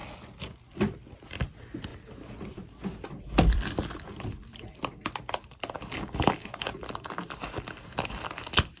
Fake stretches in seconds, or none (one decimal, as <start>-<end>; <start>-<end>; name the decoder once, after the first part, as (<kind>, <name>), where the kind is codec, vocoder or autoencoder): 1.9-6.6 (vocoder, BigVGAN v2)